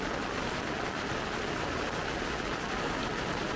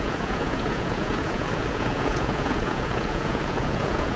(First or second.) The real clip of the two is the first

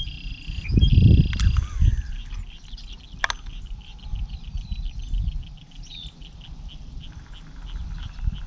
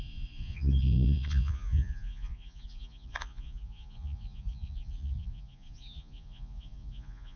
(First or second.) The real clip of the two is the first